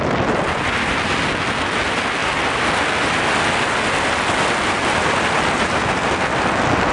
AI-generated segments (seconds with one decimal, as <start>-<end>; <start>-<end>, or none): none